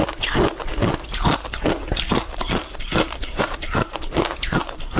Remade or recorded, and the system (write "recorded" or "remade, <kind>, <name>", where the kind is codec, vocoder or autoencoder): remade, vocoder, BigVGAN v2